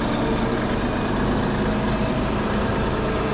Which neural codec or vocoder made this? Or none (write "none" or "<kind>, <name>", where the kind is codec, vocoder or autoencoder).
none